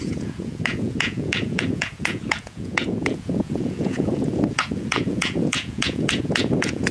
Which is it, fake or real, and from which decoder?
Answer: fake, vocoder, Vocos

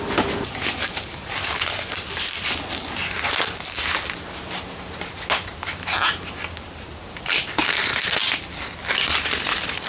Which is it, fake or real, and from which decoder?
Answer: real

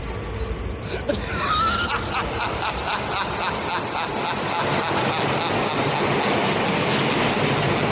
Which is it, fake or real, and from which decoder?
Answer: real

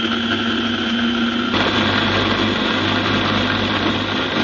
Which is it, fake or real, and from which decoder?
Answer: real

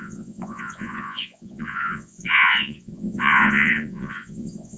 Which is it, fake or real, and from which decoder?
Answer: fake, vocoder, Vocos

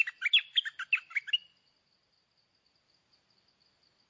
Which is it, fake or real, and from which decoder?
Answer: real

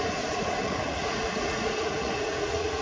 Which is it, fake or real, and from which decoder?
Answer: fake, vocoder, Vocos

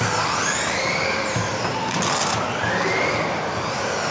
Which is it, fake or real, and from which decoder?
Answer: real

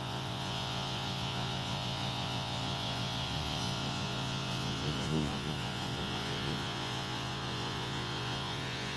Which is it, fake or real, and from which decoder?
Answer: fake, vocoder, Vocos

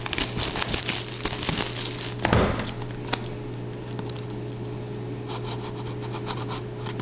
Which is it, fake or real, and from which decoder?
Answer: real